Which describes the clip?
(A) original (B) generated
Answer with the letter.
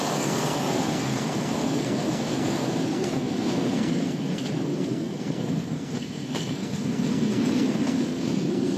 B